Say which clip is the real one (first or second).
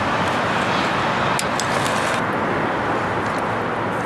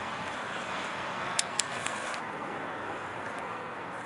first